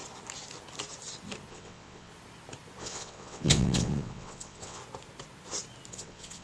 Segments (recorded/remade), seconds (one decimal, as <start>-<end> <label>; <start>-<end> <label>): 0.0-1.5 recorded; 1.5-2.1 remade; 2.1-2.8 recorded; 2.8-4.8 remade; 4.8-5.9 recorded; 5.9-6.4 remade